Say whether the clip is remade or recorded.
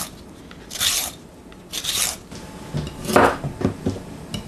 recorded